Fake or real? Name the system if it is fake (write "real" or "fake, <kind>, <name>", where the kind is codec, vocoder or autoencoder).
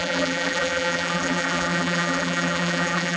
fake, vocoder, BigVGAN v2